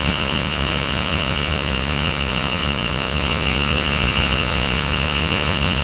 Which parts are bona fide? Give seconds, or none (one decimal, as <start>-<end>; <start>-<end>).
none

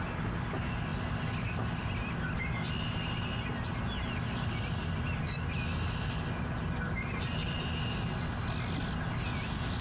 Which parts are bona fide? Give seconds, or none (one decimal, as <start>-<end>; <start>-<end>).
0.0-9.8

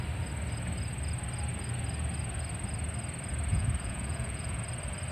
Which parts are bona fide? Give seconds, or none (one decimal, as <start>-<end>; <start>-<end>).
0.0-3.5; 4.6-5.1

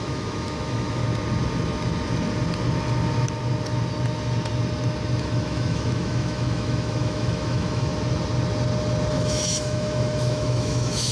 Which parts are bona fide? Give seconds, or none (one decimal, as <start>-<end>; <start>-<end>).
1.0-5.2; 7.9-9.1